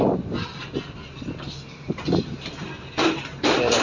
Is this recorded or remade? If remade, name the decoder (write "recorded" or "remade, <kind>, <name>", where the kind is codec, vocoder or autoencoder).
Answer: recorded